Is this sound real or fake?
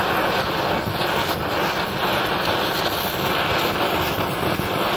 real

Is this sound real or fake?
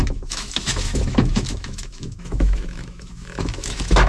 fake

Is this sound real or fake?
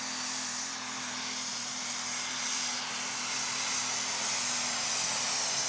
real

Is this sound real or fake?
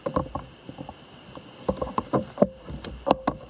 real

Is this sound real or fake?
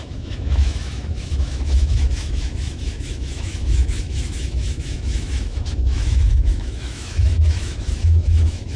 fake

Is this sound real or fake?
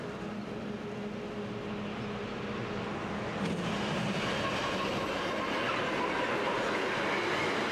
real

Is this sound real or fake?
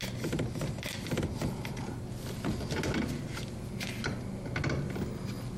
real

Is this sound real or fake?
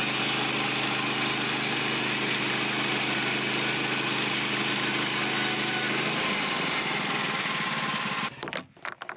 real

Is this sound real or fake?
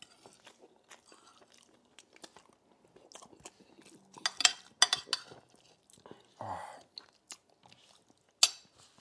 real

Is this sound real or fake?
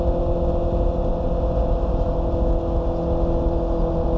real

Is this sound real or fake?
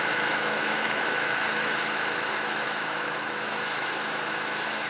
fake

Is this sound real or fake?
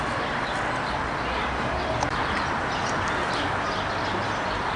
real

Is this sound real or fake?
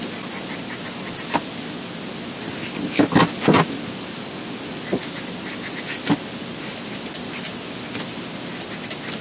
real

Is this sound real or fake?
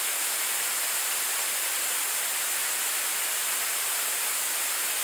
real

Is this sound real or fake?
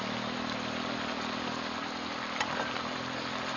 real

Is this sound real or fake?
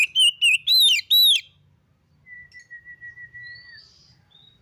real